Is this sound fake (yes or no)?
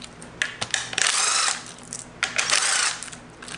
no